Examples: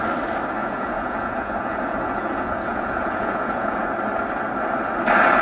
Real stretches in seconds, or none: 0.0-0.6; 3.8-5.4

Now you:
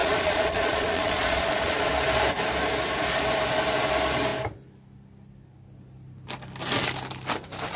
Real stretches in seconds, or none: 1.9-7.8

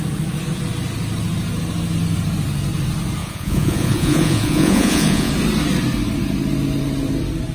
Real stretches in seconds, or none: 0.0-3.2; 5.3-7.5